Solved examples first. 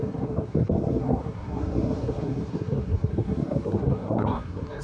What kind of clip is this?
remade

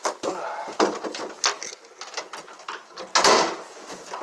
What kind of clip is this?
recorded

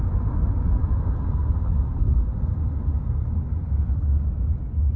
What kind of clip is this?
recorded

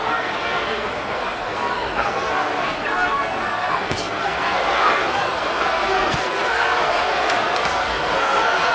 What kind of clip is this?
remade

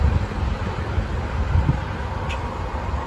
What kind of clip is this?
recorded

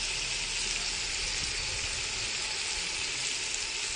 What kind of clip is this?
recorded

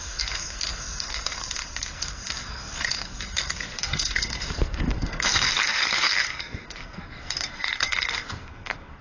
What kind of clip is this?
remade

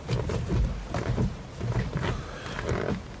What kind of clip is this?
recorded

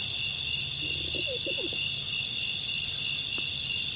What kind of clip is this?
recorded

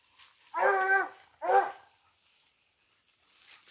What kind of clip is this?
recorded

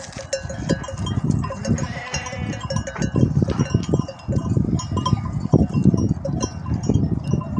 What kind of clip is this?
recorded